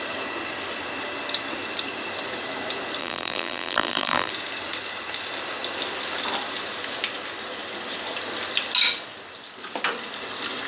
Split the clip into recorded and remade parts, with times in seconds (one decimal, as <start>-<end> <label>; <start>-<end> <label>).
0.0-3.0 recorded; 3.0-4.3 remade; 4.3-10.7 recorded